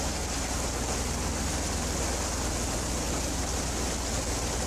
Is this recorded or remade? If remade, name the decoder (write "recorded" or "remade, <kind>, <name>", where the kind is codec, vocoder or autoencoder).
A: recorded